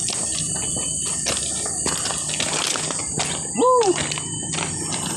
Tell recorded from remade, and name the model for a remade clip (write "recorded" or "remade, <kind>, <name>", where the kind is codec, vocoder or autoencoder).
recorded